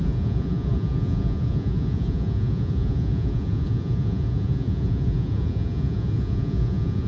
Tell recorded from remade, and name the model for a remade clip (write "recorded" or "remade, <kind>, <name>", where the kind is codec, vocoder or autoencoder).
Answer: remade, vocoder, Vocos